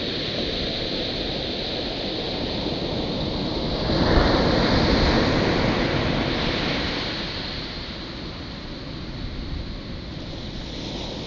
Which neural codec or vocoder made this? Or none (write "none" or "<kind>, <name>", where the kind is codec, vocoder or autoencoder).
none